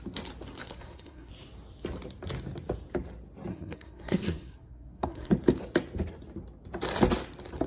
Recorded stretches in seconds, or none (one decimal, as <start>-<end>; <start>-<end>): 0.0-0.6; 1.3-3.5; 5.3-7.7